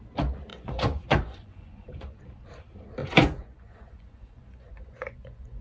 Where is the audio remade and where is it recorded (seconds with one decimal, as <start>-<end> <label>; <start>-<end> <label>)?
0.0-0.5 recorded; 0.5-2.2 remade; 2.2-3.0 recorded; 3.0-5.6 remade